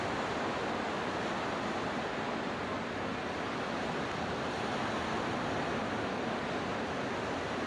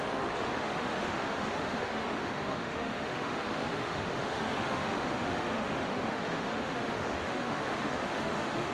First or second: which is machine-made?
second